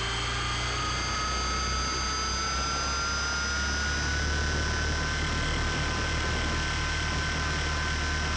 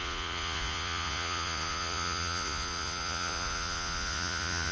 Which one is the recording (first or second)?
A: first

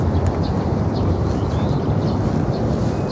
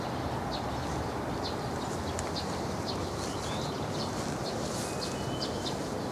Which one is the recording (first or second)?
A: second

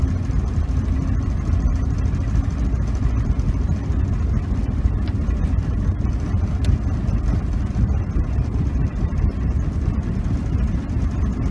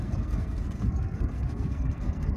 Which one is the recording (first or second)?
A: first